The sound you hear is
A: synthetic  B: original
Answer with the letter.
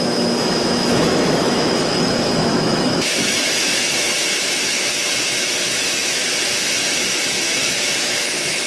A